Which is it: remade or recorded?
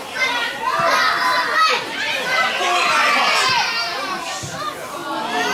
recorded